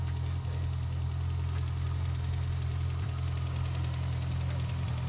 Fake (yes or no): no